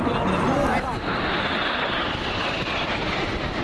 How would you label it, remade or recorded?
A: recorded